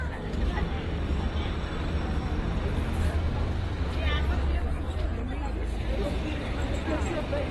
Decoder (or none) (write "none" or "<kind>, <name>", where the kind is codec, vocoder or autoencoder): vocoder, BigVGAN v2